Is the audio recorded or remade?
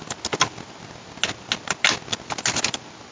recorded